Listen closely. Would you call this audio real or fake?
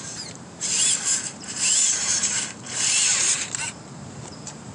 fake